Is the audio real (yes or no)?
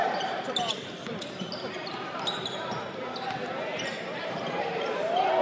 no